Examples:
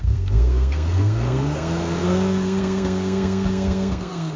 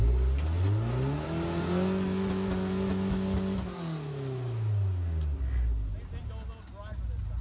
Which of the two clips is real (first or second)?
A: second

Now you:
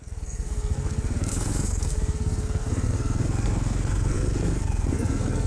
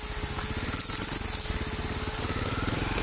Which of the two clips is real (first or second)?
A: second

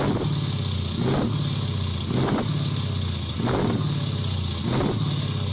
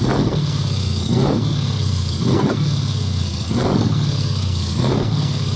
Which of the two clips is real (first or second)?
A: first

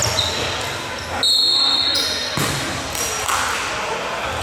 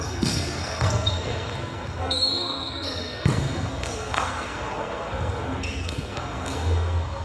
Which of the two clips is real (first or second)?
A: first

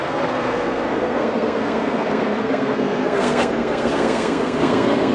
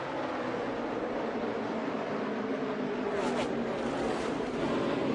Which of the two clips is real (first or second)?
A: second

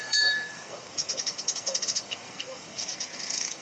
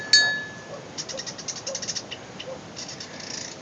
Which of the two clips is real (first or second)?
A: second